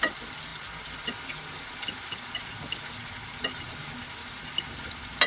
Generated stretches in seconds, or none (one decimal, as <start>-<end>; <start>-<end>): none